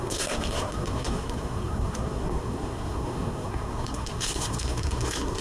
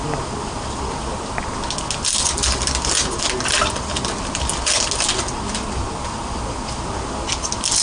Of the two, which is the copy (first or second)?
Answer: first